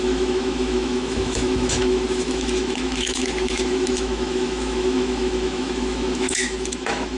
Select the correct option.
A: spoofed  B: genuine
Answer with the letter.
A